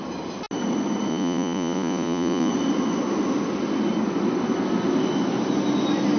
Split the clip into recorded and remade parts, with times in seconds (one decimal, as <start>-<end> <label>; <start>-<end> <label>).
0.0-1.1 recorded; 1.1-2.5 remade; 2.5-6.2 recorded